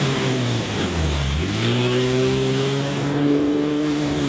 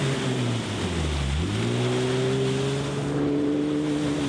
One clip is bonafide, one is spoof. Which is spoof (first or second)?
first